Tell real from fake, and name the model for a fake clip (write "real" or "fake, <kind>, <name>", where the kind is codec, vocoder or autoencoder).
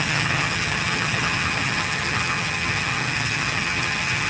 fake, vocoder, HiFi-GAN